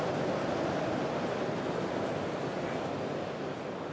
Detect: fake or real real